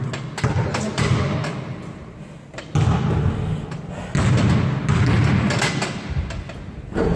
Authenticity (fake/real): real